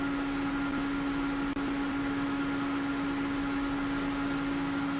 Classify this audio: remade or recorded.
recorded